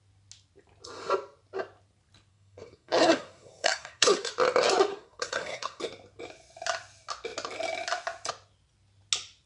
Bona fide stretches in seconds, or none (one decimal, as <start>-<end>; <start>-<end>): 0.0-2.3; 4.3-4.9; 5.8-9.5